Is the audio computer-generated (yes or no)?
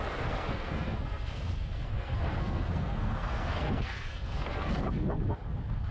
yes